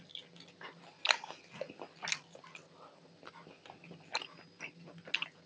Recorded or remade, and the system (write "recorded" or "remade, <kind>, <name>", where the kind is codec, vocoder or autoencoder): recorded